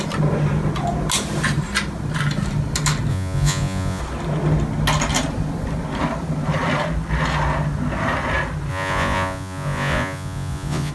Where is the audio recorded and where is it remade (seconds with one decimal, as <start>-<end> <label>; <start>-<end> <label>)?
0.0-3.1 recorded; 3.1-4.0 remade; 4.0-8.7 recorded; 8.7-10.9 remade